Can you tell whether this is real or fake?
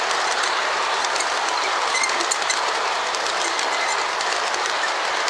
fake